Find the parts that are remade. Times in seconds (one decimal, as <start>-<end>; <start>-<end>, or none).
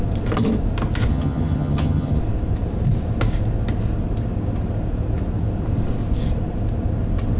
1.1-2.2